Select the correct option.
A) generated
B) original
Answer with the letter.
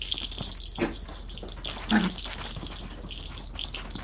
B